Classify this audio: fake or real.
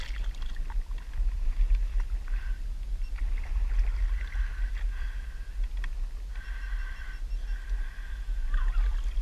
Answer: real